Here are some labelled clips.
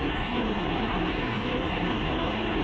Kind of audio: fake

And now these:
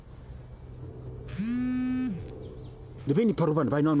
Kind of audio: real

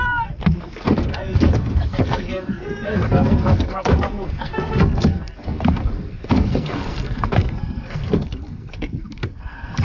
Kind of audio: fake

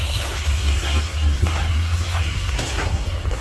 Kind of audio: fake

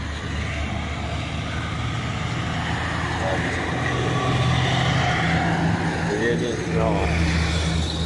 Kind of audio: real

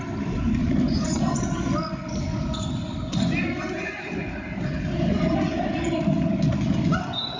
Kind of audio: real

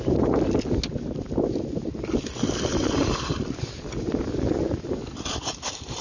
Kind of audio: real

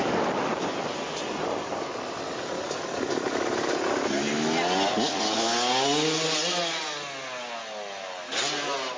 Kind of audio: real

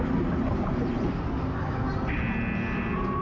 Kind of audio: real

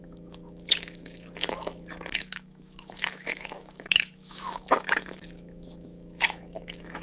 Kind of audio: fake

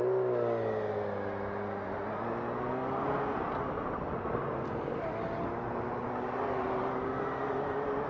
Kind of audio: real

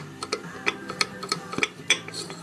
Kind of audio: fake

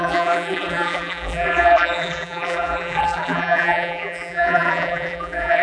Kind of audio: fake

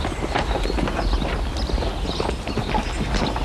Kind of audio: real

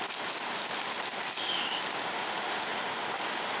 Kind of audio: real